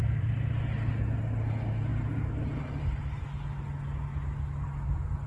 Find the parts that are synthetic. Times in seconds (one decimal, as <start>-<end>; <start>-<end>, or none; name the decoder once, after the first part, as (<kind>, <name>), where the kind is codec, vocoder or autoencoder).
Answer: none